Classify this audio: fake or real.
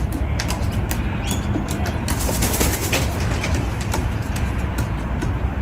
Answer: real